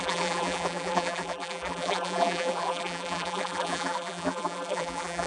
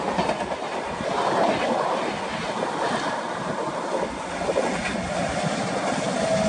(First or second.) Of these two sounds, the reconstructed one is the first